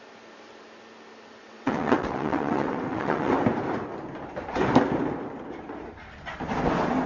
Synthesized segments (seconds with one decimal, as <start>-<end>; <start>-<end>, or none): 1.4-3.3